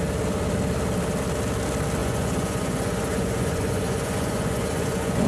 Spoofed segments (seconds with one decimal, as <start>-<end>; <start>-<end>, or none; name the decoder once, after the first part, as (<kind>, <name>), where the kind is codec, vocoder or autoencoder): 2.0-5.3 (vocoder, Vocos)

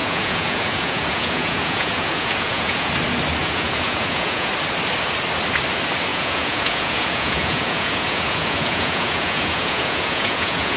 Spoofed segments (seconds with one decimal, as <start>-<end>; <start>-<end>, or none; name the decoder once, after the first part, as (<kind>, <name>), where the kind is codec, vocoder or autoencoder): 0.0-2.9 (vocoder, Vocos); 3.4-4.5; 6.1-10.8

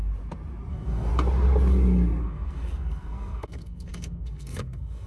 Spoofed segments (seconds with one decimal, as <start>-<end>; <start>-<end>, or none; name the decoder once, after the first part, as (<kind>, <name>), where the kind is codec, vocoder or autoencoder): 0.7-1.1 (codec, SNAC); 2.2-5.1

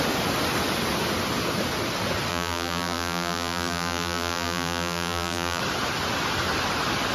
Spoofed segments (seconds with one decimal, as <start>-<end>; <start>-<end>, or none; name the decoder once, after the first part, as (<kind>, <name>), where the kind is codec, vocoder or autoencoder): 2.3-5.6 (vocoder, BigVGAN v2)

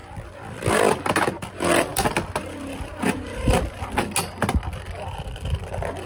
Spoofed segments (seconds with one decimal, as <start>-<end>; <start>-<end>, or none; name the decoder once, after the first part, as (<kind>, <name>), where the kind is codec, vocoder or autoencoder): none

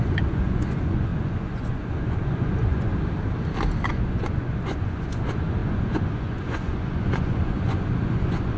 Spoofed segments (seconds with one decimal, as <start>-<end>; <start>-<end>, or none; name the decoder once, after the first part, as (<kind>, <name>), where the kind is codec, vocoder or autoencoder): 0.0-2.9 (vocoder, Vocos); 3.9-8.6